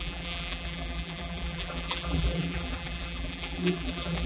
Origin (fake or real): fake